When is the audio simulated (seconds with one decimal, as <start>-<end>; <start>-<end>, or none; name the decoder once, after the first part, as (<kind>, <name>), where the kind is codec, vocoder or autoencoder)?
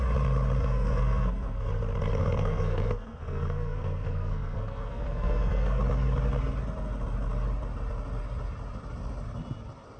0.6-1.7 (codec, SNAC); 2.2-5.8